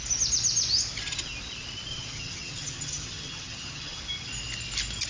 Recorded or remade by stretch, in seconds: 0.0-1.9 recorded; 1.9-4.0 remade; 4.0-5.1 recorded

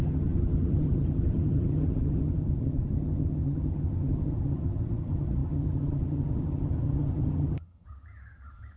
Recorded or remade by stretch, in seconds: 0.0-8.8 remade

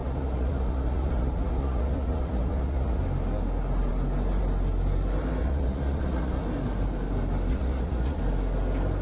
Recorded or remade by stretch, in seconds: 0.0-3.0 remade; 3.0-5.4 recorded; 5.4-6.4 remade; 6.4-7.5 recorded; 7.5-8.2 remade; 8.2-9.0 recorded

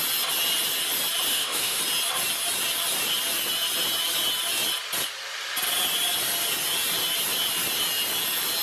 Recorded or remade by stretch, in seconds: 0.0-1.3 recorded; 1.3-1.8 remade; 1.8-8.6 recorded

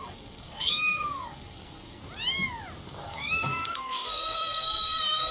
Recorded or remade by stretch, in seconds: 0.0-2.0 remade; 2.0-3.0 recorded; 3.0-5.3 remade